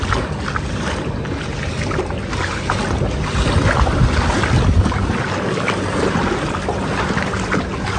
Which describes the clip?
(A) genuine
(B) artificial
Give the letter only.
A